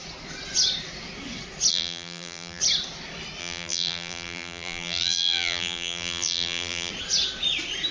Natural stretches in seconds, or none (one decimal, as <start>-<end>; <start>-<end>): 0.0-1.7; 2.6-3.4; 6.9-7.9